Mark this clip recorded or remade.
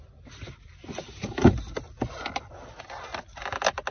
recorded